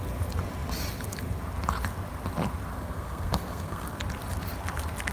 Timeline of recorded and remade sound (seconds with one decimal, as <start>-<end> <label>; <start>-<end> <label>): 0.0-2.7 recorded; 2.7-4.0 remade; 4.0-5.1 recorded